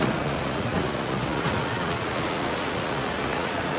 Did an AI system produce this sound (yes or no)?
yes